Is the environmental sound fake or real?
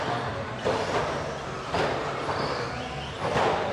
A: real